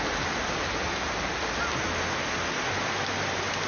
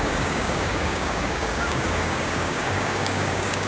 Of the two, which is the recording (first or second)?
first